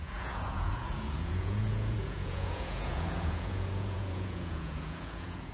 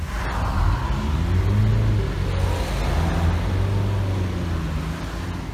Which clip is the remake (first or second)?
first